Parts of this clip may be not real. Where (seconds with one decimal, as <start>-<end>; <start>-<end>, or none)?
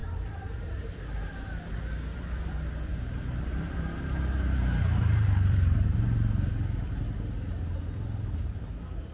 0.0-1.8; 2.9-6.5